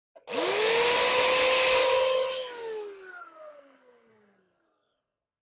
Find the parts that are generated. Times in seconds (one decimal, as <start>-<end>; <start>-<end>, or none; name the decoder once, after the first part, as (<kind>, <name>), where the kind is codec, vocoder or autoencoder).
3.2-5.4 (codec, SNAC)